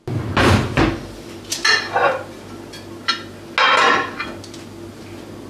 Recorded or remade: recorded